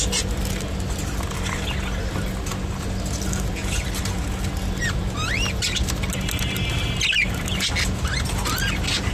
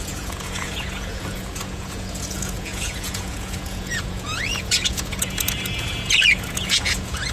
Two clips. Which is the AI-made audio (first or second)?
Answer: second